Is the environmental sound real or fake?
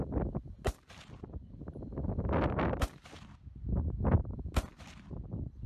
real